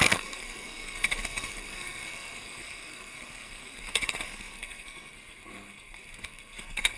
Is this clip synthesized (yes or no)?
yes